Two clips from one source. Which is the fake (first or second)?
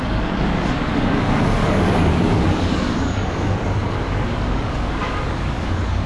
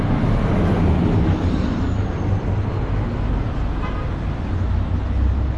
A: first